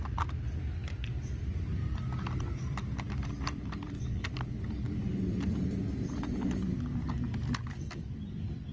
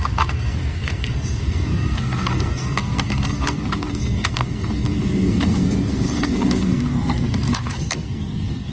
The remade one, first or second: second